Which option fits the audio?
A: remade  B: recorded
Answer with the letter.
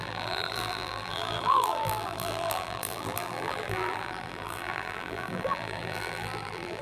A